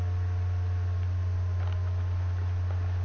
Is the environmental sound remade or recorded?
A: recorded